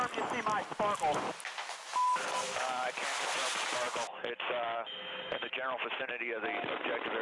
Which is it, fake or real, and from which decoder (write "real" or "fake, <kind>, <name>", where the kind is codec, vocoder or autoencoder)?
real